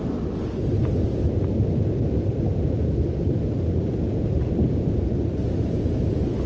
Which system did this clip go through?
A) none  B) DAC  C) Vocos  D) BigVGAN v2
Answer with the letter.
A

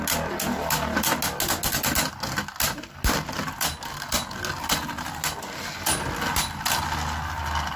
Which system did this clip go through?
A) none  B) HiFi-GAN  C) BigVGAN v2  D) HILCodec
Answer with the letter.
A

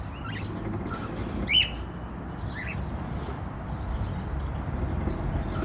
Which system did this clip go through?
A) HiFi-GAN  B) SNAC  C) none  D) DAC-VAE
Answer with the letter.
C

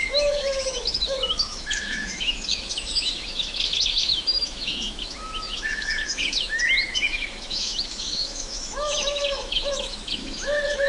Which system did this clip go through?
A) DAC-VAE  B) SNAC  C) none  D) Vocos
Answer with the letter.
A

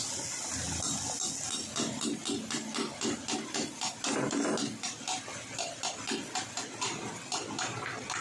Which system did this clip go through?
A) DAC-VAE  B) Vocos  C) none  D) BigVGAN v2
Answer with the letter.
C